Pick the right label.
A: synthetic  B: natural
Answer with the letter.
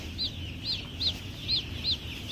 B